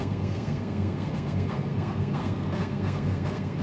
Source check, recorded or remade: remade